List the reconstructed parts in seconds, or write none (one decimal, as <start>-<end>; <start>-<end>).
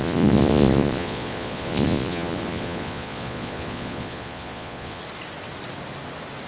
0.0-5.0